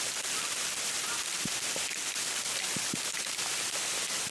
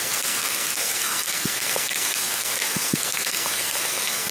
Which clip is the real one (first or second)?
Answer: first